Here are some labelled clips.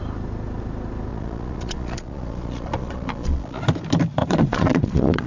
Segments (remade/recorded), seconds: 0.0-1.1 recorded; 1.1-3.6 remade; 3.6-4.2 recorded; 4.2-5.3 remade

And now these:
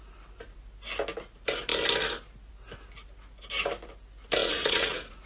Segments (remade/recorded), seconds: 0.0-4.4 recorded; 4.4-5.3 remade

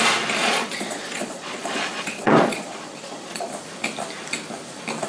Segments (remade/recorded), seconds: 0.0-0.4 recorded; 0.4-3.5 remade; 3.5-5.1 recorded

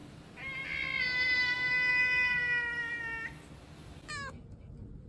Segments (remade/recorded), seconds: 0.0-5.1 recorded

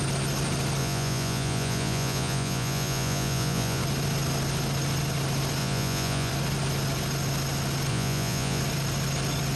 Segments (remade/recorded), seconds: 0.0-0.8 recorded; 0.8-3.8 remade; 3.8-5.6 recorded; 5.6-6.3 remade; 6.3-7.9 recorded; 7.9-8.6 remade; 8.6-9.6 recorded